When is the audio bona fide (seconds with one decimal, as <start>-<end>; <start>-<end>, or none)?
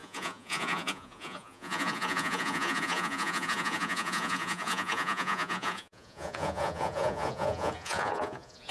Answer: none